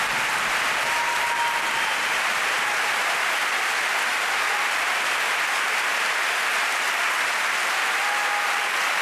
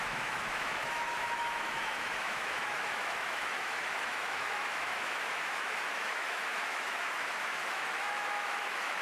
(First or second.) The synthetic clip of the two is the second